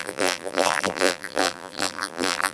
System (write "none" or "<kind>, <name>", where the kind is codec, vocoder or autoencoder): vocoder, BigVGAN v2